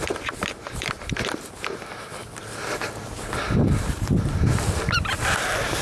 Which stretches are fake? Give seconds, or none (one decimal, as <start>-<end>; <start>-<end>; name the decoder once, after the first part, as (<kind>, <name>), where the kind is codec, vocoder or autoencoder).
0.4-1.0 (vocoder, BigVGAN v2)